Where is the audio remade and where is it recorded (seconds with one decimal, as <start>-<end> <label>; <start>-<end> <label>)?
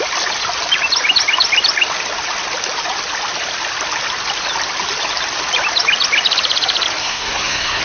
0.0-7.0 recorded; 7.0-7.8 remade